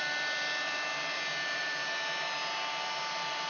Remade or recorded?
recorded